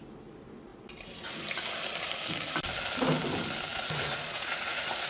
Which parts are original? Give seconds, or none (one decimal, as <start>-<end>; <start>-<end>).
0.0-3.7